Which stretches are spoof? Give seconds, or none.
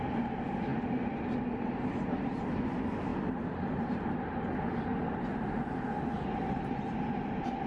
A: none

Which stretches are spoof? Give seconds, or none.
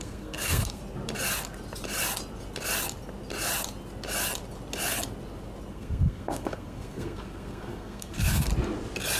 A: 0.0-0.8 (codec, SNAC); 5.7-8.5